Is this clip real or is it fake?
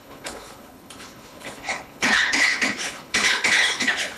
fake